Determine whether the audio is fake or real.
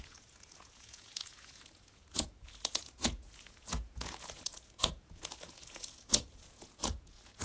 fake